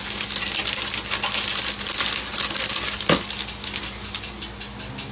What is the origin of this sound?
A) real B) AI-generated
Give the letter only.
A